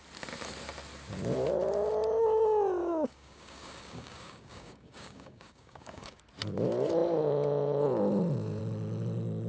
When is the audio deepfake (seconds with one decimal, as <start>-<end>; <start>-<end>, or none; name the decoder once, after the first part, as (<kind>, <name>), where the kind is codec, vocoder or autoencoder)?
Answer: 2.8-6.2 (codec, DAC)